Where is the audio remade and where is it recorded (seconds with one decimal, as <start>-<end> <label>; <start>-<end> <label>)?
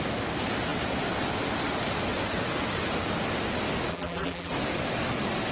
0.0-3.9 recorded; 3.9-4.5 remade; 4.5-5.5 recorded